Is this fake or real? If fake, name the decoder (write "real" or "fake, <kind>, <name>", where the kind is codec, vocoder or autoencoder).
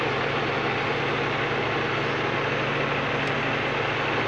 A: real